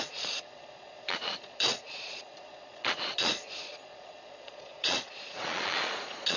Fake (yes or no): yes